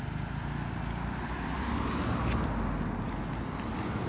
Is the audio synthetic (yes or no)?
no